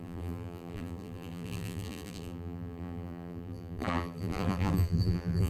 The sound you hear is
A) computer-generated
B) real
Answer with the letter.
A